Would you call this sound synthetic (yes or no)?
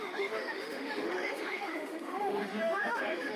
yes